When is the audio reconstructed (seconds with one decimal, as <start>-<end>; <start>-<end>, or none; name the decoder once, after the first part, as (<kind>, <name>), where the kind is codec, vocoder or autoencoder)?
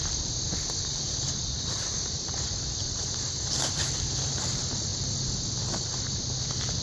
1.7-4.9 (vocoder, BigVGAN v2); 5.7-6.8